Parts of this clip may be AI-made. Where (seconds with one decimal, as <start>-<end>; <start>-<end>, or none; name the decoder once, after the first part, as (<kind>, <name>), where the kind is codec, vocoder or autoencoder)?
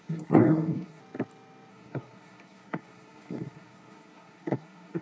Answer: 0.0-1.0 (codec, SNAC); 1.7-5.0